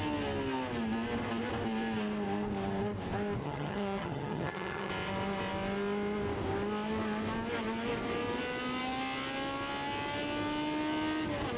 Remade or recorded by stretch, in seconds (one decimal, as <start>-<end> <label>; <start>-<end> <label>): 0.0-3.4 recorded; 3.4-4.9 remade; 4.9-11.6 recorded